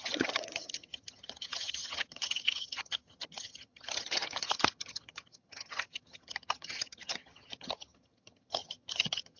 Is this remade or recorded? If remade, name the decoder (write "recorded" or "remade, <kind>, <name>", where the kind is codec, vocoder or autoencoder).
remade, vocoder, HiFi-GAN